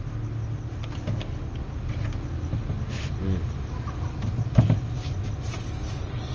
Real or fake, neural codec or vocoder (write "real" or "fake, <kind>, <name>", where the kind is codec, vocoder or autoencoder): real